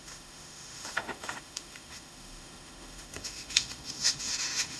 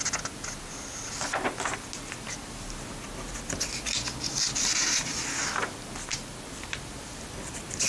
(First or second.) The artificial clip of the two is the first